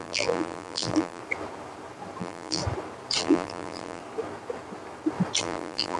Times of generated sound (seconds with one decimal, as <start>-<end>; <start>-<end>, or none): 0.0-1.2; 2.2-2.6; 3.2-4.0; 5.4-6.0